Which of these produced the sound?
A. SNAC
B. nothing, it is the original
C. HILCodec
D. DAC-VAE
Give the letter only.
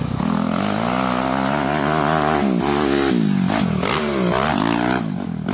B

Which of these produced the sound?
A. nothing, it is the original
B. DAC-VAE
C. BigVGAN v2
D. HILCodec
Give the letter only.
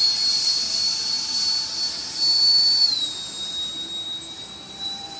C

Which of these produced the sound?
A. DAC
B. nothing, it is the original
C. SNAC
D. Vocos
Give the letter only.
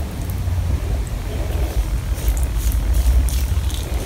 B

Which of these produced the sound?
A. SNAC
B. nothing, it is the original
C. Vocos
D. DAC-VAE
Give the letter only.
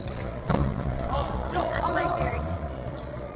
C